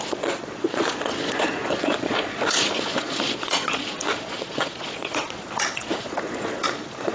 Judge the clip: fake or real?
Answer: fake